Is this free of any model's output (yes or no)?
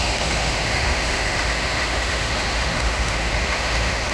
no